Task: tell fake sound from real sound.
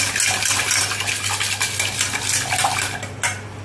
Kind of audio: real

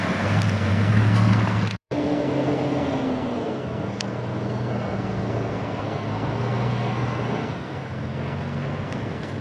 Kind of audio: fake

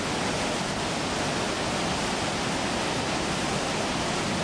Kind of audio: real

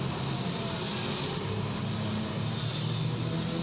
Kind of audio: real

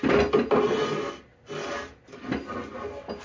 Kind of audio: real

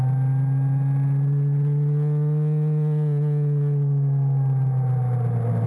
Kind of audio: real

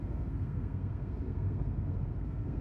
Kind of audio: fake